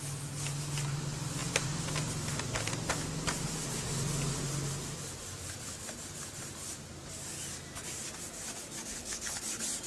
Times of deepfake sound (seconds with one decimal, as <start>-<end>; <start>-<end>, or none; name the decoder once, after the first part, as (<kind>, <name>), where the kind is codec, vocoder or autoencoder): 8.9-9.4 (codec, HILCodec)